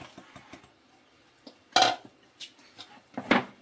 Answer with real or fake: real